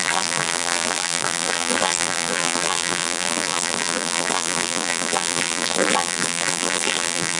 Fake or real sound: fake